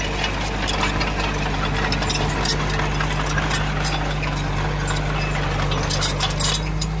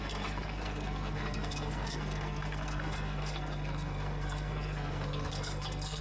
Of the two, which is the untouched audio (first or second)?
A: first